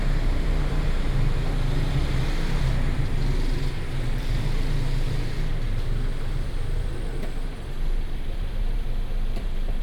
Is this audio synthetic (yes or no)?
yes